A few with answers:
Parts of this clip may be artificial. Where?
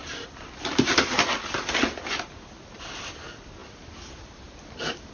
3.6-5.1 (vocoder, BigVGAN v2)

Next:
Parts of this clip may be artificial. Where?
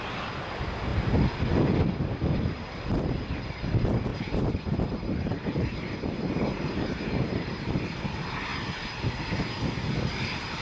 4.1-7.8 (vocoder, BigVGAN v2)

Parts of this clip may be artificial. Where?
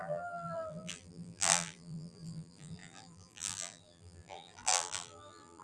0.0-5.6 (vocoder, BigVGAN v2)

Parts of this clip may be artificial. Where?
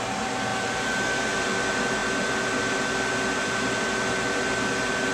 0.5-1.5 (vocoder, BigVGAN v2)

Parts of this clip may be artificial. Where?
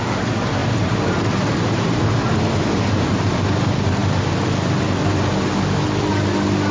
0.6-3.4 (vocoder, BigVGAN v2)